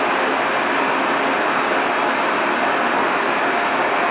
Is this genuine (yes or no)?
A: yes